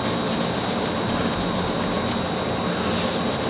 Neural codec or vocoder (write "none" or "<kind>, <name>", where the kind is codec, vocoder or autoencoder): none